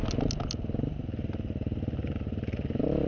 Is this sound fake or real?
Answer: real